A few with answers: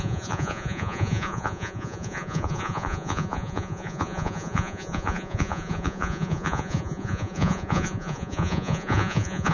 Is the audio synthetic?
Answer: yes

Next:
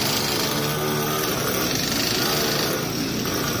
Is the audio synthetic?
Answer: no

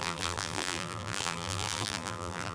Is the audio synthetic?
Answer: yes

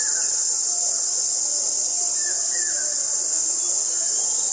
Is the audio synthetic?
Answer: no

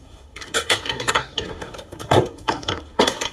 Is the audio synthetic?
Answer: yes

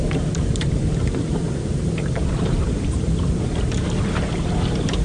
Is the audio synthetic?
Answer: yes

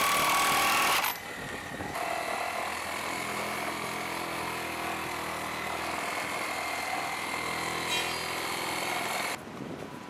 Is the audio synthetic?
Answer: no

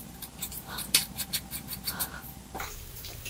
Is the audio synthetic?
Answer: yes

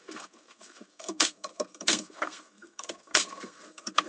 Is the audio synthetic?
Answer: yes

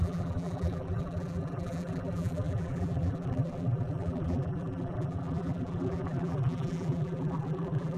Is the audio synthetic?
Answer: yes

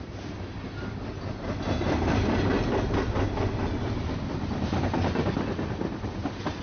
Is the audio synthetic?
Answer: no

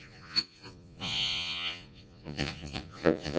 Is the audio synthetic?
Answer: yes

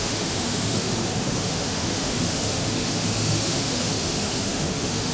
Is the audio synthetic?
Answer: yes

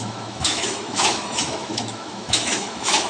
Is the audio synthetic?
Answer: yes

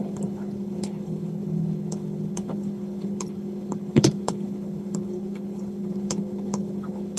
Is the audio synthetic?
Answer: yes